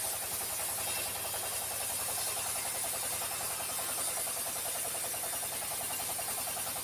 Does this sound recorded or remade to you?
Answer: recorded